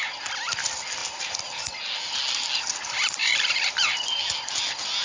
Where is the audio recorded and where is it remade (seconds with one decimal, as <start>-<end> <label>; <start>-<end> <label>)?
0.0-1.0 recorded; 1.0-1.6 remade; 1.6-3.2 recorded; 3.2-4.2 remade; 4.2-5.0 recorded